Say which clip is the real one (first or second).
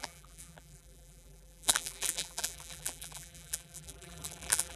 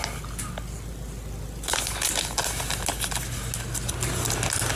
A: second